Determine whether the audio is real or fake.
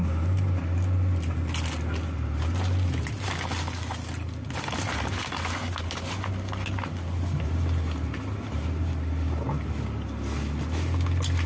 real